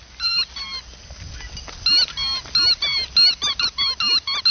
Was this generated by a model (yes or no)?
no